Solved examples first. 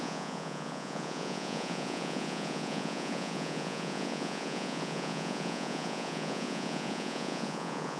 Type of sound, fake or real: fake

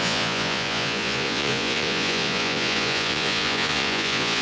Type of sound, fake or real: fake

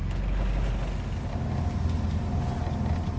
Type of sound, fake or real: real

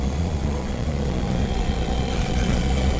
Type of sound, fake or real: fake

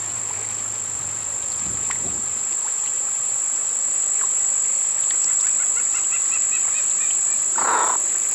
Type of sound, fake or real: fake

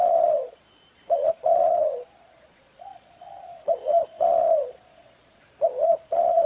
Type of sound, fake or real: fake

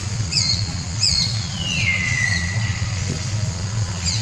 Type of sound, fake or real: fake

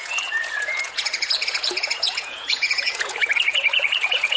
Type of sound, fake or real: fake